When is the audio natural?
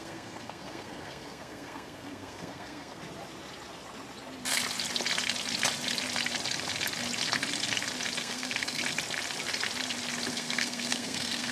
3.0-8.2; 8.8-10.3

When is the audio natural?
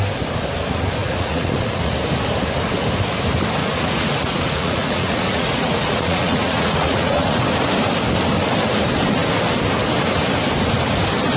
0.0-1.0; 1.9-3.6; 7.4-11.4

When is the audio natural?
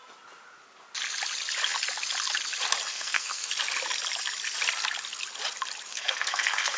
0.0-2.9; 3.5-5.9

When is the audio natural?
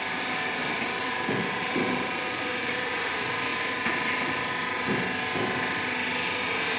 0.0-1.0; 2.9-3.5; 4.5-6.8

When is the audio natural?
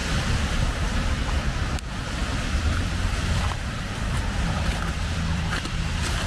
1.3-2.2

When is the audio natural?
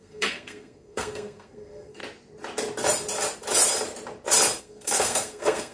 2.0-4.6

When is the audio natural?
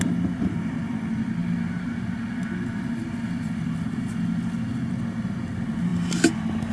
0.0-6.7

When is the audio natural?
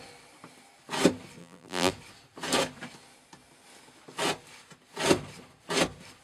0.0-1.4; 1.9-6.2